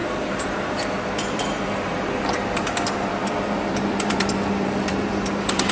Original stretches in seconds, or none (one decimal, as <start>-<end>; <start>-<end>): none